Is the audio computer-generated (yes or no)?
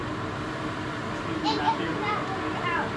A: no